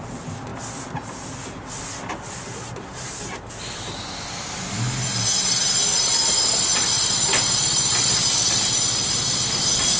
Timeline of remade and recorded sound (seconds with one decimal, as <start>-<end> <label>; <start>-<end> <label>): 0.0-10.0 recorded